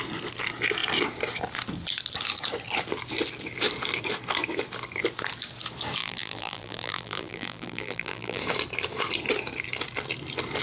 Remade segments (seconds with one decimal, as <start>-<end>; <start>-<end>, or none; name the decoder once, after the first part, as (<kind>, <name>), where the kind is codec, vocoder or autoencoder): 6.0-8.4 (vocoder, BigVGAN v2)